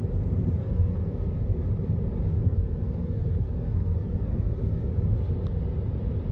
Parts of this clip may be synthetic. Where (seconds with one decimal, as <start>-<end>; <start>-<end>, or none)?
0.6-1.6; 2.3-4.9